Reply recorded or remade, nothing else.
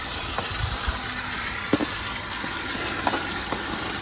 recorded